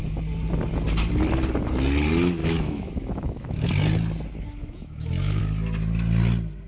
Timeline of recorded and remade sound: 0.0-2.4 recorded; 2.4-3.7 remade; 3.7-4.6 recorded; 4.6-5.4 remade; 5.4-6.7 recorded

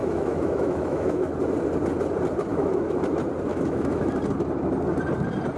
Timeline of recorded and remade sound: 0.0-1.3 remade; 1.3-2.5 recorded; 2.5-3.0 remade; 3.0-3.5 recorded; 3.5-4.1 remade; 4.1-5.6 recorded

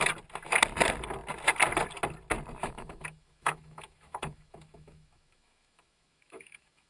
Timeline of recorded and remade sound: 0.0-2.6 recorded; 2.6-6.9 remade

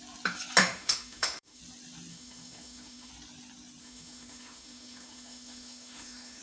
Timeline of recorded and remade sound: 0.0-0.6 recorded; 0.6-1.6 remade; 1.6-2.1 recorded; 2.1-3.1 remade; 3.1-3.8 recorded; 3.8-6.4 remade

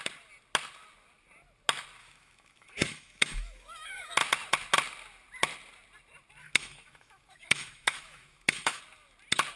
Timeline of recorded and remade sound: 0.0-2.0 recorded; 2.0-4.1 remade; 4.1-6.4 recorded; 6.4-8.8 remade; 8.8-9.6 recorded

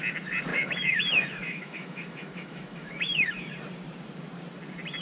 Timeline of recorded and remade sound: 0.0-0.5 recorded; 0.5-3.5 remade; 3.5-5.0 recorded

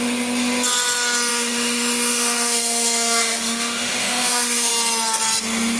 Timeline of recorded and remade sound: 0.0-1.3 recorded; 1.3-4.7 remade; 4.7-5.8 recorded